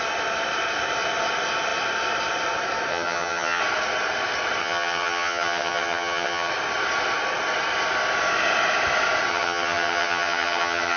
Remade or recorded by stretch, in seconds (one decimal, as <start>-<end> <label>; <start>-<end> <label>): 0.0-2.9 recorded; 2.9-3.6 remade; 3.6-4.6 recorded; 4.6-6.5 remade; 6.5-9.3 recorded; 9.3-11.0 remade